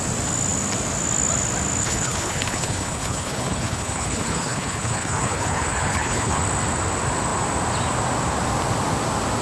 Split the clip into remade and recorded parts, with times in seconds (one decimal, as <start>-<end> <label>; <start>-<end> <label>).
0.0-1.8 recorded; 1.8-6.4 remade; 6.4-9.4 recorded